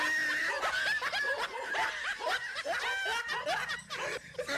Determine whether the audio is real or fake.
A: real